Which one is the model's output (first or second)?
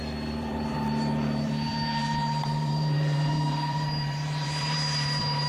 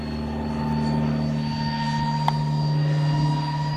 first